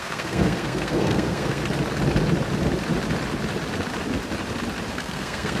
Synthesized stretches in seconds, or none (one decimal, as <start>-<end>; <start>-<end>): 0.0-1.6; 4.9-5.6